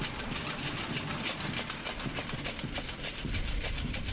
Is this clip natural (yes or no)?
yes